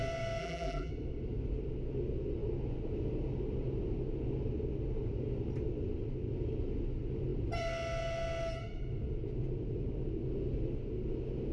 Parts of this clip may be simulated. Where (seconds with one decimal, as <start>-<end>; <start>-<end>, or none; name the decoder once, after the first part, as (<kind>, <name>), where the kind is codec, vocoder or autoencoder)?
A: 0.4-0.9 (vocoder, BigVGAN v2)